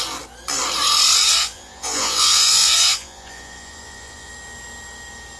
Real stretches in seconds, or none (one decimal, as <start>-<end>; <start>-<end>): 0.0-1.4; 4.3-5.4